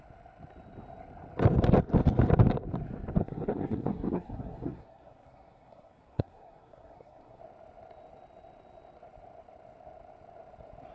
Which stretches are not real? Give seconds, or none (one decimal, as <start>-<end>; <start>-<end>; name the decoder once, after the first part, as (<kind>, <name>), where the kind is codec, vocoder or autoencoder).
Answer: 3.2-7.4 (codec, SNAC)